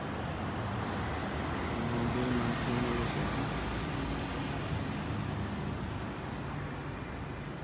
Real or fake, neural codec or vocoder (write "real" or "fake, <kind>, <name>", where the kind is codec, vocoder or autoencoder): real